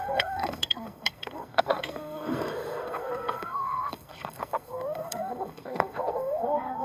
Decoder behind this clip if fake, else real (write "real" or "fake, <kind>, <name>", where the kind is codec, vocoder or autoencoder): fake, codec, SNAC